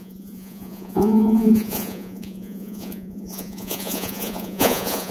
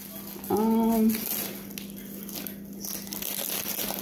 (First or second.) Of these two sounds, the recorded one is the second